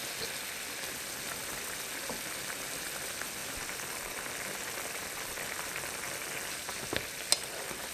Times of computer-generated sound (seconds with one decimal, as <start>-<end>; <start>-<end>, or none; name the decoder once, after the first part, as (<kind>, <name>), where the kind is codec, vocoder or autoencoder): none